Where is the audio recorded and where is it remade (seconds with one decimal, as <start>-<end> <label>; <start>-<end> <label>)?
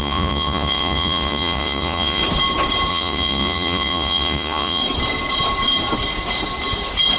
0.0-2.2 remade; 2.2-2.9 recorded; 2.9-4.8 remade; 4.8-7.2 recorded